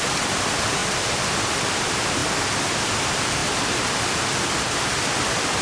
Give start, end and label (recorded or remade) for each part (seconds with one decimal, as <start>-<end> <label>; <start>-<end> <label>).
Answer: 0.0-2.2 remade; 2.2-2.8 recorded; 2.8-3.4 remade; 3.4-4.0 recorded; 4.0-5.6 remade